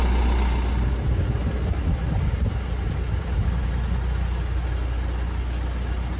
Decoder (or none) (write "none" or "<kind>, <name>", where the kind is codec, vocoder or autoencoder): none